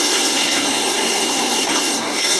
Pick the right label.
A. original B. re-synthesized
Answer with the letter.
B